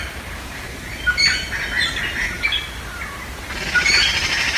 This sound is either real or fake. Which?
real